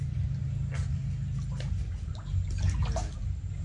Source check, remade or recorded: recorded